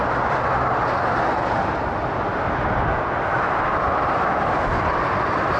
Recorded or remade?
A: recorded